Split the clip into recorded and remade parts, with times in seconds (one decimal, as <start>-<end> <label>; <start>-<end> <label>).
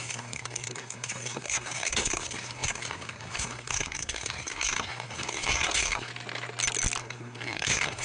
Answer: 0.0-6.1 remade; 6.1-7.0 recorded; 7.0-8.0 remade